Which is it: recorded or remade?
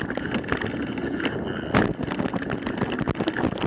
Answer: recorded